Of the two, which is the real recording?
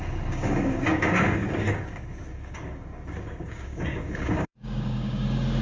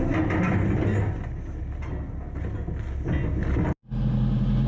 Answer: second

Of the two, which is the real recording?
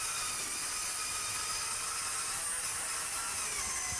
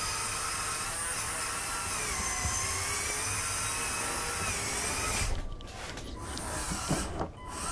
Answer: second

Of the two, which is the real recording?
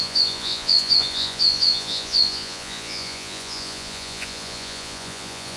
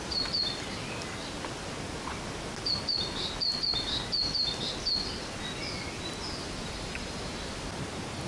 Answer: second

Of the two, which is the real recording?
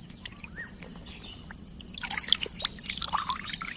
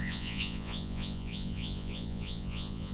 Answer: first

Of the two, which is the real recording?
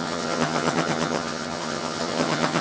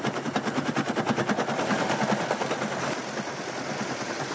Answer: second